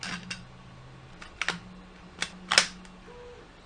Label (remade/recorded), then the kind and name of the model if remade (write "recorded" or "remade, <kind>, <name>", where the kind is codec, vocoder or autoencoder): recorded